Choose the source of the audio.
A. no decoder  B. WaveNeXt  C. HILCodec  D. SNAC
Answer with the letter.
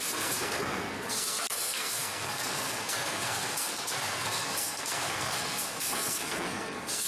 D